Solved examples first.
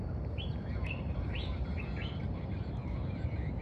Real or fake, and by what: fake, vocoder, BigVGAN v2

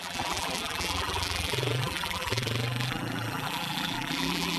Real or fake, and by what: fake, vocoder, BigVGAN v2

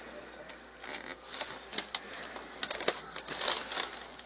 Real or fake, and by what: real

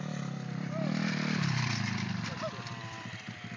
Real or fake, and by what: fake, vocoder, BigVGAN v2